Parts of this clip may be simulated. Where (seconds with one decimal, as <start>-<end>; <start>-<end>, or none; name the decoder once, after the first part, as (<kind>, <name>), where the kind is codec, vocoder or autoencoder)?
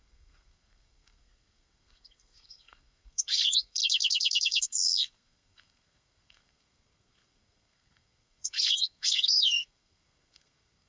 0.0-10.9 (codec, SNAC)